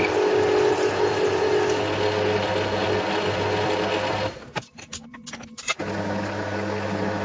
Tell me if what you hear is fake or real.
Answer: real